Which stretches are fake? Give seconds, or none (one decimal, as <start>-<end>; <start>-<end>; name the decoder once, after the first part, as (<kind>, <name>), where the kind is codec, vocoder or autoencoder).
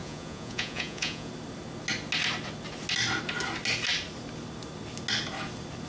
0.0-1.3 (vocoder, Vocos)